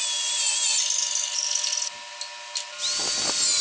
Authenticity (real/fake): real